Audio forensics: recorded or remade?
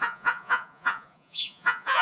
remade